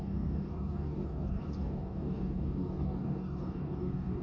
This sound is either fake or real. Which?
fake